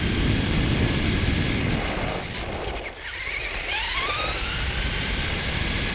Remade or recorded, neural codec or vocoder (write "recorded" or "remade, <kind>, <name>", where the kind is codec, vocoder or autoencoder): recorded